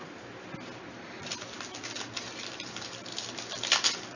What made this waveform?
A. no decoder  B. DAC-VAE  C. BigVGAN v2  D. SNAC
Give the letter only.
A